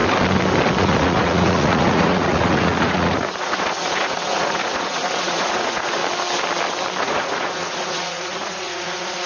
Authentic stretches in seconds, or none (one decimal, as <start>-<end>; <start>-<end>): 0.0-0.8; 6.0-7.0